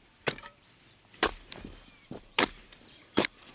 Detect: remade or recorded remade